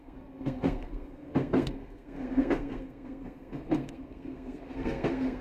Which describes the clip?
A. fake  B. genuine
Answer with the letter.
A